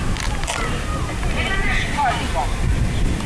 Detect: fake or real real